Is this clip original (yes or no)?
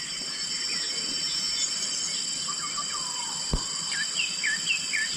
yes